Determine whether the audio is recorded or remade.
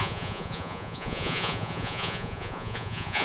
remade